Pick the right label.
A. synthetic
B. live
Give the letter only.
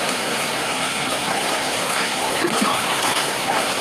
A